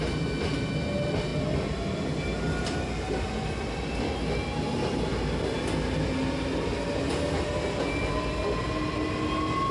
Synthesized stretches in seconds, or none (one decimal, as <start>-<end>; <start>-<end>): none